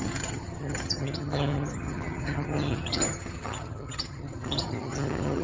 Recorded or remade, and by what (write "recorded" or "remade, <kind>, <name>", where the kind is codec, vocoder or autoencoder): remade, vocoder, HiFi-GAN